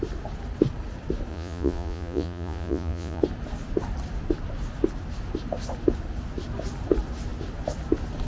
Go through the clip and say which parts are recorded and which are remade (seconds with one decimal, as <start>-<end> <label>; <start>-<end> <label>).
0.0-1.3 recorded; 1.3-3.2 remade; 3.2-8.3 recorded